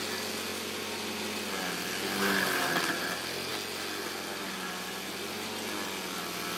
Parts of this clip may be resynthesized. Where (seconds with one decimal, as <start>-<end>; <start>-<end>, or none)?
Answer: none